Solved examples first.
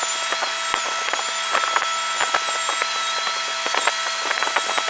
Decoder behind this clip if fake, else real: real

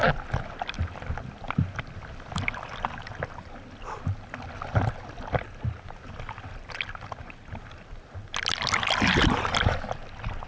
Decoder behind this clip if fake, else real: real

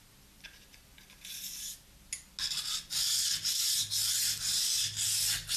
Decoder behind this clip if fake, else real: real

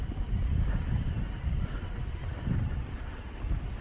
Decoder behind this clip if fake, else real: real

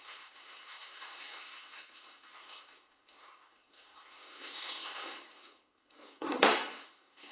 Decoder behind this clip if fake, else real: fake, codec, SNAC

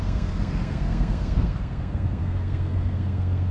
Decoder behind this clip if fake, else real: fake, codec, SNAC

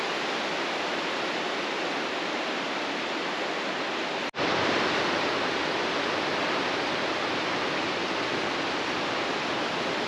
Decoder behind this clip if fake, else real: real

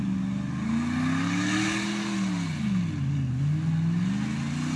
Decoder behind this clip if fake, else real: real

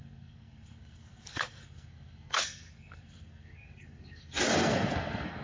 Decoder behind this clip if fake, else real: fake, codec, SNAC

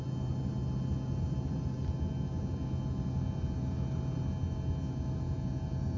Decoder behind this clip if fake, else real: real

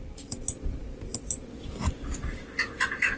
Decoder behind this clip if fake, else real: real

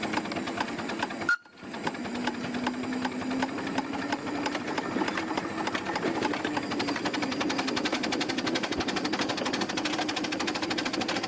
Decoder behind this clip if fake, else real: real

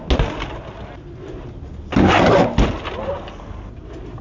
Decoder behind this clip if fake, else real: real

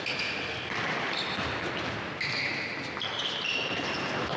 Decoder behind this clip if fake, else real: real